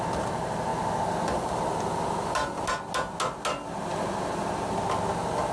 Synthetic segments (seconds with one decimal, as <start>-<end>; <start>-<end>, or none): none